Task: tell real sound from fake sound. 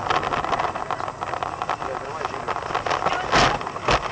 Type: real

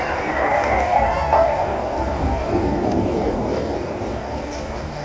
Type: fake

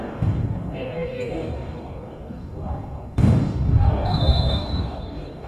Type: fake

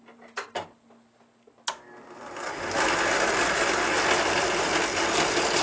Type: real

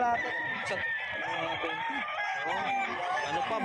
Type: real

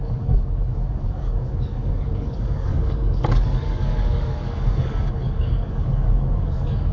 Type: fake